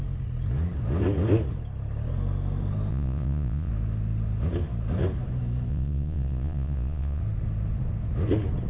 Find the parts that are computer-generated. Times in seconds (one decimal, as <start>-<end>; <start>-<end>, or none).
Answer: 2.9-3.7; 5.7-7.2